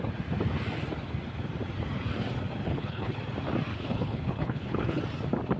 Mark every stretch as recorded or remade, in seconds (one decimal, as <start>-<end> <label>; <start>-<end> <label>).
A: 0.0-2.6 recorded; 2.6-3.2 remade; 3.2-3.7 recorded; 3.7-5.0 remade; 5.0-5.6 recorded